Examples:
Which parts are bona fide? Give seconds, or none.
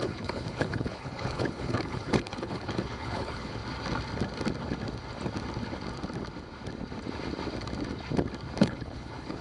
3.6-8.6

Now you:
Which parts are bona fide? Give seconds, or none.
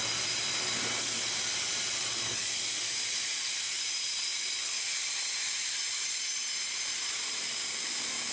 0.0-8.3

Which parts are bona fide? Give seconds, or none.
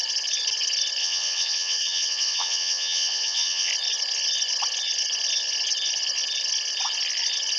0.0-1.0; 3.7-7.6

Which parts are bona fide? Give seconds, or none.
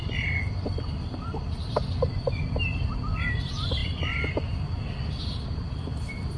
0.0-6.4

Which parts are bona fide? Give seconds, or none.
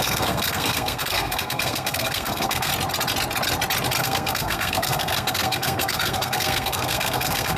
2.7-4.0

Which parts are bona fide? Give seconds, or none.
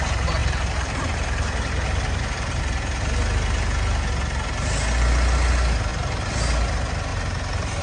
0.0-0.4; 2.6-5.9; 6.4-7.1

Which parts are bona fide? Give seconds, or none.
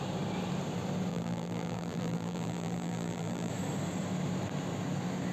0.0-1.1; 3.5-5.3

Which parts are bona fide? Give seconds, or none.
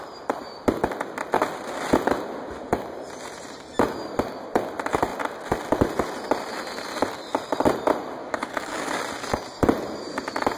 0.0-8.2; 9.0-10.6